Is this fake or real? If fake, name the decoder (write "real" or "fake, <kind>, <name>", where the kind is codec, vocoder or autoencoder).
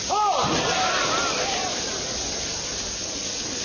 real